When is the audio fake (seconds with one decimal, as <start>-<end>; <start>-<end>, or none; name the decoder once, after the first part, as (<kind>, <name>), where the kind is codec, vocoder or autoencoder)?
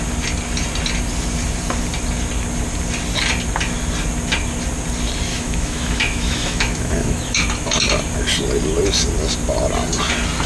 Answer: 5.3-7.4 (autoencoder, DAC-VAE)